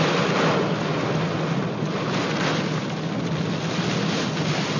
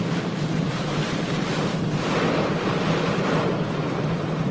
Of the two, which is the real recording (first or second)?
first